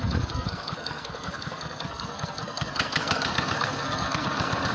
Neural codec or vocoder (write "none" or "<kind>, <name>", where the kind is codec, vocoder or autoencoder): codec, SNAC